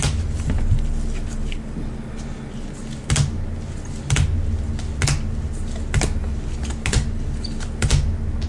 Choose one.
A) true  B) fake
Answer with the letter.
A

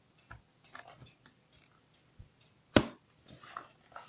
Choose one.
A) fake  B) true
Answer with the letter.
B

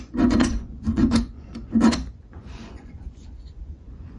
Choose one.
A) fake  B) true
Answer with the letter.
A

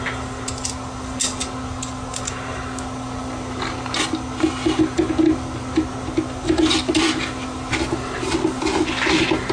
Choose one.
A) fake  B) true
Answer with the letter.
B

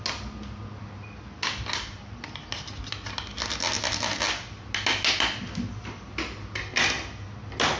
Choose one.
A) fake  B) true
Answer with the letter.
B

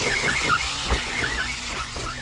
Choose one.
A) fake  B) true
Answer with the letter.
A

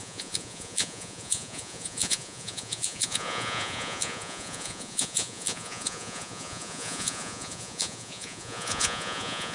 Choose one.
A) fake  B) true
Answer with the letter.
A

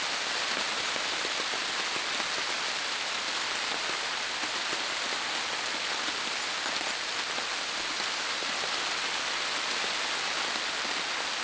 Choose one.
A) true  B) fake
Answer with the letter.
A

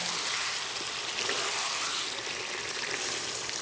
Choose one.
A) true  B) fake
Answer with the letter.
A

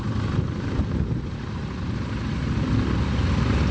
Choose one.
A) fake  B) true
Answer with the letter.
B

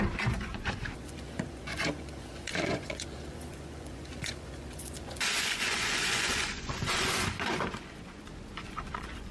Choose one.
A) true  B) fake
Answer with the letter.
B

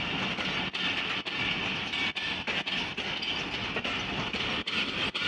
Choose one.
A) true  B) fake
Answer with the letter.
A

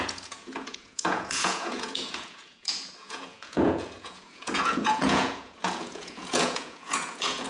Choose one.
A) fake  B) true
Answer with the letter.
A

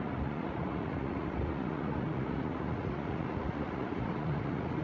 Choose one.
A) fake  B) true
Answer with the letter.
A